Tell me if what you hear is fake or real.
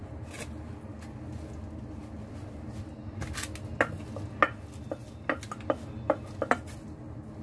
real